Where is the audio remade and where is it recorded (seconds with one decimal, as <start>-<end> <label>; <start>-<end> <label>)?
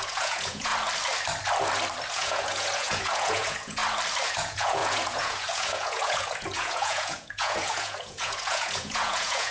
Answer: 0.0-0.7 remade; 0.7-2.1 recorded; 2.1-3.8 remade; 3.8-4.3 recorded; 4.3-9.5 remade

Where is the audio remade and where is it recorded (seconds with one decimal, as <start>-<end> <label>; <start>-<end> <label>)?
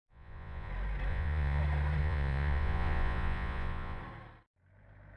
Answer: 0.0-0.7 remade; 0.7-1.1 recorded; 1.1-1.6 remade; 1.6-2.0 recorded; 2.0-4.0 remade; 4.0-5.2 recorded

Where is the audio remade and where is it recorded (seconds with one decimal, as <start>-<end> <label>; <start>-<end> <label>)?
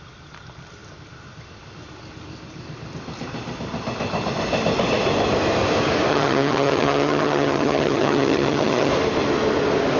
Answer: 0.0-6.1 recorded; 6.1-8.9 remade; 8.9-10.0 recorded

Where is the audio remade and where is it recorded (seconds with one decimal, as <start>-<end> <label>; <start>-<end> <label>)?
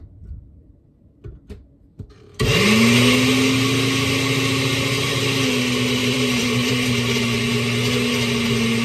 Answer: 0.0-6.0 recorded; 6.0-7.4 remade; 7.4-8.8 recorded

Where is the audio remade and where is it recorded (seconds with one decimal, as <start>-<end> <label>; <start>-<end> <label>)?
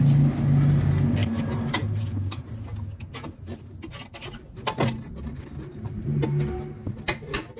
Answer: 0.0-1.2 recorded; 1.2-2.5 remade; 2.5-7.6 recorded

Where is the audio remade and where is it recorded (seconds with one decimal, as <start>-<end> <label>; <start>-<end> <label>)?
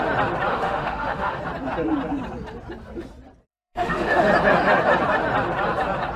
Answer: 0.0-0.5 recorded; 0.5-1.4 remade; 1.4-3.5 recorded; 3.5-4.3 remade; 4.3-6.2 recorded